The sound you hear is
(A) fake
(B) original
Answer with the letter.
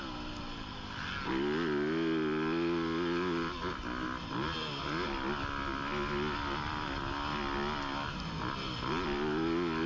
B